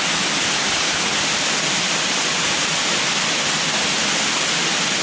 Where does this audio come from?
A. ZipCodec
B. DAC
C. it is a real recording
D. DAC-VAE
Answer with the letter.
C